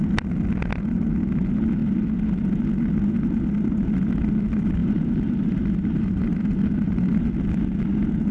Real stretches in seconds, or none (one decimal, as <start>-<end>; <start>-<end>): 0.0-4.8; 7.2-8.3